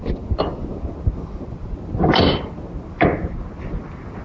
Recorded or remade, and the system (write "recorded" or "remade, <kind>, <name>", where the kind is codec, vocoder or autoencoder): recorded